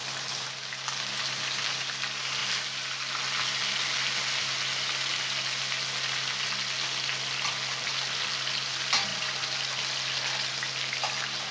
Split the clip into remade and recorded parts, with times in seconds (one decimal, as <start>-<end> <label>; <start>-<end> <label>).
0.0-11.5 recorded